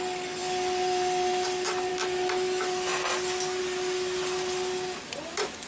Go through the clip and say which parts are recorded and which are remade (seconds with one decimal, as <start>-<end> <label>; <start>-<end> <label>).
0.0-5.7 recorded